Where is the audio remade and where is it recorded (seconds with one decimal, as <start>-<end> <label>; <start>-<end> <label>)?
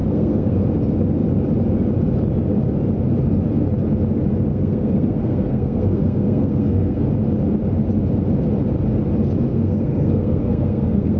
0.0-0.6 remade; 0.6-4.5 recorded; 4.5-7.0 remade; 7.0-9.5 recorded; 9.5-11.2 remade